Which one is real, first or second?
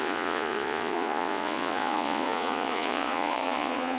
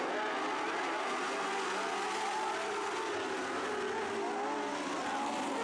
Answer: second